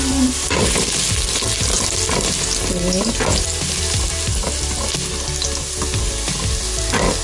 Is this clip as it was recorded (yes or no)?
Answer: yes